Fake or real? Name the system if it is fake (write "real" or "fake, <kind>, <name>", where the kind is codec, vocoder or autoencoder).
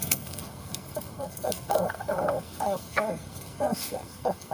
fake, codec, SNAC